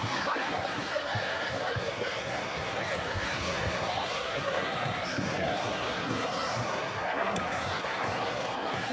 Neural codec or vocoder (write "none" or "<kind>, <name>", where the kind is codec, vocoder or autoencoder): codec, SNAC